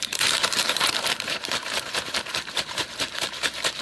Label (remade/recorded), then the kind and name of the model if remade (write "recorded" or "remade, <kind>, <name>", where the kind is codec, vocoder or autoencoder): remade, vocoder, BigVGAN v2